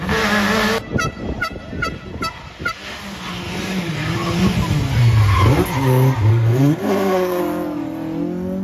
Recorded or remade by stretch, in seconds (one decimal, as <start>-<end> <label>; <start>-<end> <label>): 0.0-6.3 recorded; 6.3-7.4 remade; 7.4-8.6 recorded